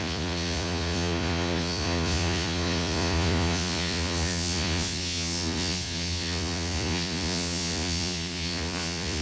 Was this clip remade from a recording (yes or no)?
yes